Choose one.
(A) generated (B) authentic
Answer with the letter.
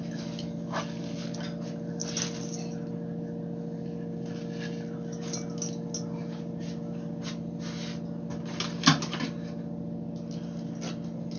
B